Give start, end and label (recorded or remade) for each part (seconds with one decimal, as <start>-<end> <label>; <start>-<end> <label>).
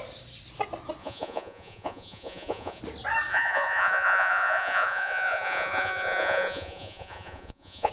0.0-1.0 recorded; 1.0-2.8 remade; 2.8-3.3 recorded; 3.3-7.9 remade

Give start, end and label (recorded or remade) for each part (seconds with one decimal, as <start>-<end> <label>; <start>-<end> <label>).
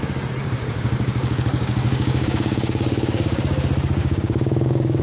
0.0-0.4 recorded; 0.4-3.4 remade; 3.4-4.0 recorded; 4.0-5.0 remade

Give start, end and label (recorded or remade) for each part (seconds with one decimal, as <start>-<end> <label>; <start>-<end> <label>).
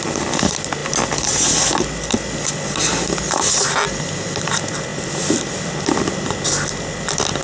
0.0-7.4 recorded